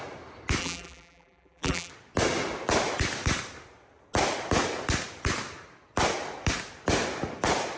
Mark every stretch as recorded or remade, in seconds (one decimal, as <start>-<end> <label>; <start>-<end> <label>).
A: 0.0-0.6 recorded; 0.6-1.9 remade; 1.9-7.8 recorded

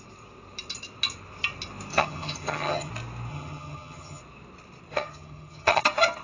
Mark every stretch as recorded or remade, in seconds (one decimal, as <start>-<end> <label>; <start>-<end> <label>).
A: 0.0-1.9 recorded; 1.9-2.9 remade; 2.9-3.3 recorded; 3.3-4.2 remade; 4.2-4.9 recorded; 4.9-5.8 remade; 5.8-6.2 recorded

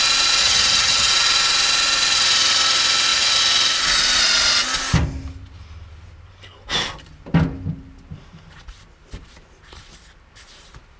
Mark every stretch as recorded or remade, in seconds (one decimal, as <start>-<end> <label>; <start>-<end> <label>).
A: 0.0-0.4 recorded; 0.4-1.1 remade; 1.1-11.0 recorded

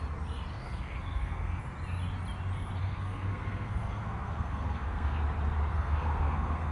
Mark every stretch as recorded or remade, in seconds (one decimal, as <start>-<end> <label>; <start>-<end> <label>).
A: 0.0-0.5 recorded; 0.5-1.6 remade; 1.6-2.8 recorded; 2.8-5.2 remade; 5.2-5.7 recorded; 5.7-6.7 remade